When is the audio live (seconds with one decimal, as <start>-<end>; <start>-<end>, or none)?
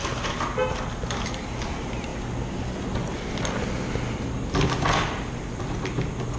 0.0-6.4